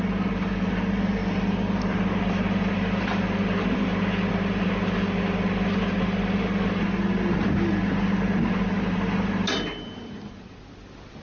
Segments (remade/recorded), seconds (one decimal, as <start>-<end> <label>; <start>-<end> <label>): 0.0-11.2 recorded